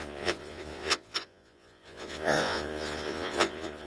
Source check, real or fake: fake